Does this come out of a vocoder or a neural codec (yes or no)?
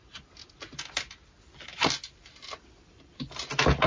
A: no